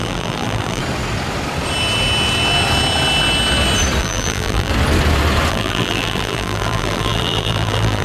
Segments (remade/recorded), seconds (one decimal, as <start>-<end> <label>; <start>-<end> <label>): 0.0-0.8 remade; 0.8-4.0 recorded; 4.0-4.7 remade; 4.7-5.5 recorded; 5.5-8.0 remade